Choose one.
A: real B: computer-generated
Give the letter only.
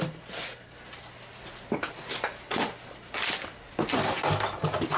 A